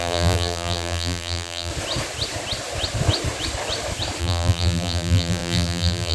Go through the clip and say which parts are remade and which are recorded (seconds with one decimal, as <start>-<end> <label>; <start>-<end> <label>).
0.0-1.7 remade; 1.7-4.2 recorded; 4.2-6.1 remade